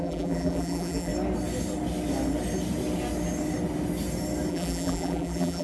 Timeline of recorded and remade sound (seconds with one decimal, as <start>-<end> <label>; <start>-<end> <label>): 0.0-1.1 remade; 1.1-4.5 recorded; 4.5-5.6 remade